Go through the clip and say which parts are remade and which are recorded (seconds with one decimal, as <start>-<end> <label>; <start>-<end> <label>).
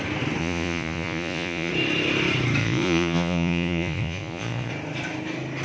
0.0-0.4 recorded; 0.4-1.7 remade; 1.7-2.6 recorded; 2.6-4.7 remade; 4.7-5.6 recorded